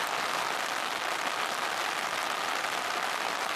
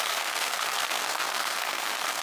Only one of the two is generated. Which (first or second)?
second